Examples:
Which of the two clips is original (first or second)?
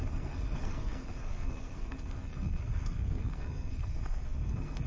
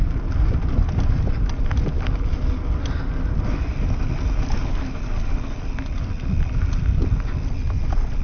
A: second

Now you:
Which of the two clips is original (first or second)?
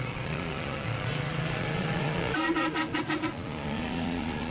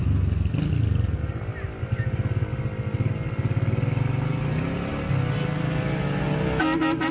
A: second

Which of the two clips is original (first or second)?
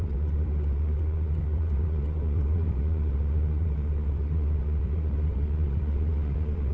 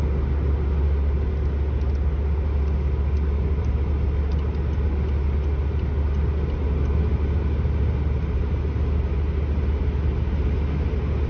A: second